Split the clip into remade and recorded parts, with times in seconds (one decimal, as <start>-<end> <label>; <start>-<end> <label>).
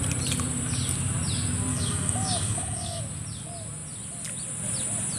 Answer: 0.0-1.7 recorded; 1.7-3.0 remade; 3.0-5.2 recorded